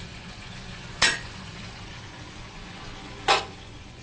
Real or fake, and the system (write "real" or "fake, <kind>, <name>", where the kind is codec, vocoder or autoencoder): fake, vocoder, Vocos